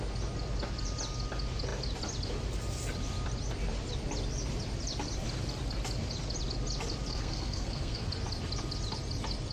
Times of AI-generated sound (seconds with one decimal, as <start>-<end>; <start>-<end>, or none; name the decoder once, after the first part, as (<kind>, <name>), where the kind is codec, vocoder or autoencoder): 7.1-8.1 (codec, SNAC)